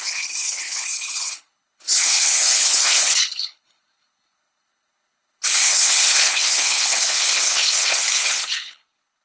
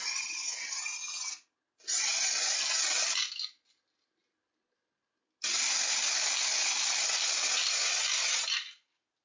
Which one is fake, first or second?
first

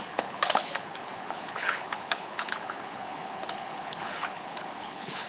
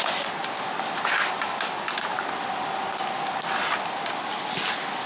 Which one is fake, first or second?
first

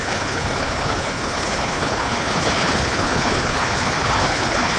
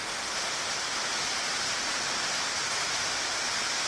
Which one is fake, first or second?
first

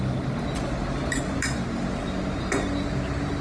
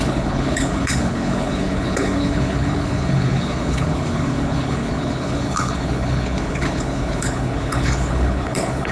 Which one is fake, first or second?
second